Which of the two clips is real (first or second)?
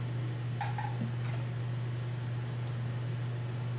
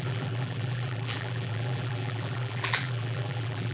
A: first